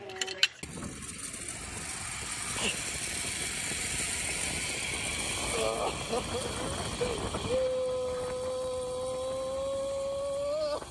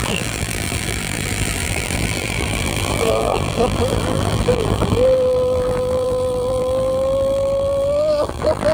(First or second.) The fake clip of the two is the second